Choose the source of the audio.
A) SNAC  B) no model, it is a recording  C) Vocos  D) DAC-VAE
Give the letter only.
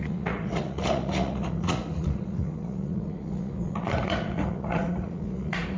C